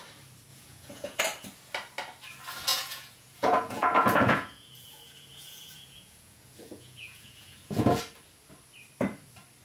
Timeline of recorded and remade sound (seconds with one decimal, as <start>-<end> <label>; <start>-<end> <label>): 0.0-0.5 recorded; 0.5-1.2 remade; 1.2-2.7 recorded; 2.7-8.0 remade; 8.0-9.6 recorded